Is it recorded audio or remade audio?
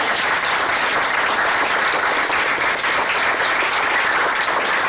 recorded